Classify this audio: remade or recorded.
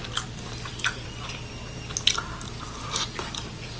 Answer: recorded